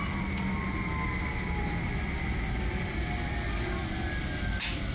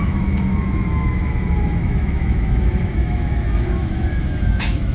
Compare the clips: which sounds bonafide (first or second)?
first